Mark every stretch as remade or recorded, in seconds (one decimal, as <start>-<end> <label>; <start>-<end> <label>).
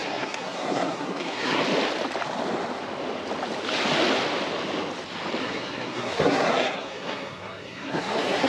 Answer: 0.0-1.6 remade; 1.6-5.4 recorded; 5.4-8.5 remade